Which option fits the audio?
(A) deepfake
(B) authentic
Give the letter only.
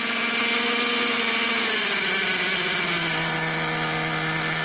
B